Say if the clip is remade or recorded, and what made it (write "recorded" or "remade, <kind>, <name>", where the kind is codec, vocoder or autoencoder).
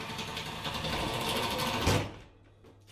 recorded